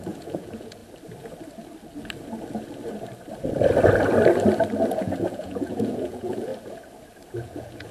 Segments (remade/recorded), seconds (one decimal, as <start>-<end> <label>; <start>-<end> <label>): 0.0-0.8 remade; 0.8-4.9 recorded; 4.9-6.5 remade; 6.5-7.4 recorded; 7.4-7.9 remade